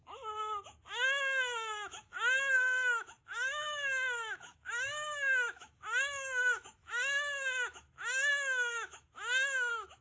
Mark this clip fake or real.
fake